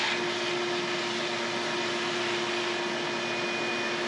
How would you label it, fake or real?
real